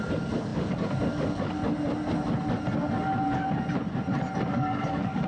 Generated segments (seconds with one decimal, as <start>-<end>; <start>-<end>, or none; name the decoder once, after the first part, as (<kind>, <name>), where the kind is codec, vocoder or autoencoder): 0.0-1.6 (codec, DAC); 4.5-5.3